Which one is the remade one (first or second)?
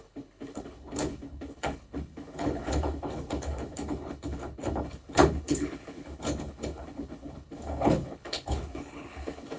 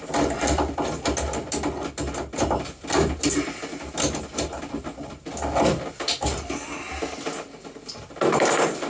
first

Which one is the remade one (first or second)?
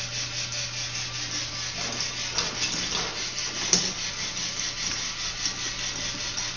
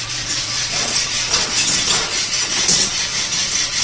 second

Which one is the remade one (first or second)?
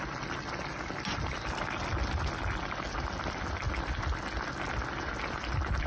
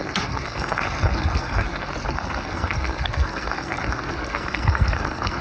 second